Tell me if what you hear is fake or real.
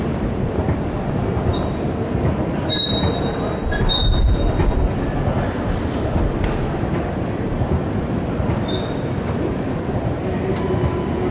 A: real